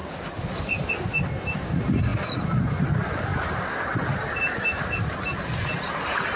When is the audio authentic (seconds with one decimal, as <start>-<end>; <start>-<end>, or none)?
0.0-6.4